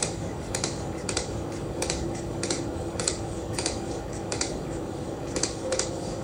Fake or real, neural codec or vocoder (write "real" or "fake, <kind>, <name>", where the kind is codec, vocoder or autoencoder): fake, codec, DAC